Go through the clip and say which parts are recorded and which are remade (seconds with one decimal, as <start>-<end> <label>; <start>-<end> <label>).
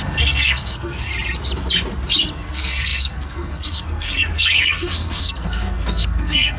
0.0-1.1 remade; 1.1-2.3 recorded; 2.3-6.6 remade